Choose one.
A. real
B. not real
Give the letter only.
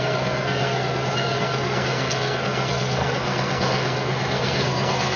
B